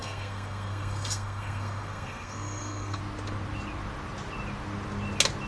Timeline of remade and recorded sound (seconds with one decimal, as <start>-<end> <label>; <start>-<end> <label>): 0.0-3.0 remade; 3.0-5.5 recorded

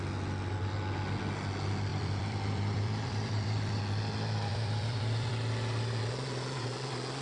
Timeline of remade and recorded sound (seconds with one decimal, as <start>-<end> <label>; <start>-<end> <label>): 0.0-1.9 recorded; 1.9-3.8 remade; 3.8-4.5 recorded; 4.5-5.3 remade; 5.3-7.2 recorded

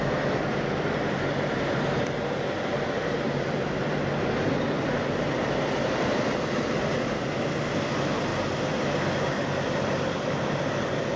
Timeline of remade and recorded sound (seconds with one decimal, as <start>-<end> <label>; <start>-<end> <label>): 0.0-3.0 recorded; 3.0-4.2 remade; 4.2-8.3 recorded; 8.3-8.8 remade; 8.8-11.2 recorded

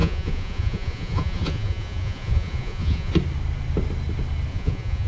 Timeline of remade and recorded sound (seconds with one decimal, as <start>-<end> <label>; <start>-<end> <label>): 0.0-3.1 remade; 3.1-4.5 recorded; 4.5-5.1 remade